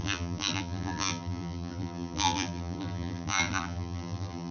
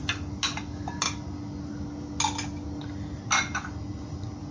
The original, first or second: second